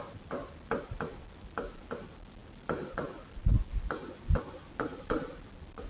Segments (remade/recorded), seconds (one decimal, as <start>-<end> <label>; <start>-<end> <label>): 0.0-5.9 recorded